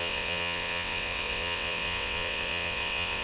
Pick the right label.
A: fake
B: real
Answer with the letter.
A